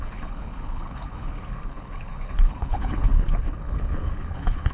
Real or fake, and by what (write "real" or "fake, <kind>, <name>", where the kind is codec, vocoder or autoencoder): fake, codec, HILCodec